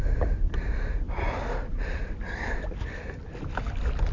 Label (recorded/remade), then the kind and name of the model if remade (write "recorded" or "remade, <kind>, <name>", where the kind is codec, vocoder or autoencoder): recorded